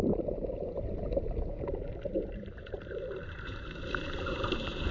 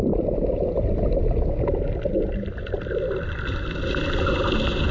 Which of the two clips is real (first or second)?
second